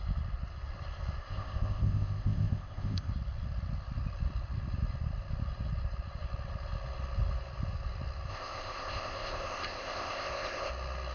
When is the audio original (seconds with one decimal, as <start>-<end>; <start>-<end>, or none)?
0.0-1.2; 3.1-8.3; 10.7-11.1